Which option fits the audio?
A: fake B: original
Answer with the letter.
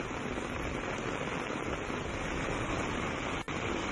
B